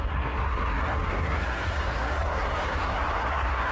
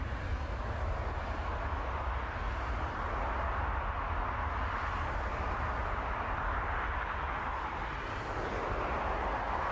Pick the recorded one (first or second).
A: second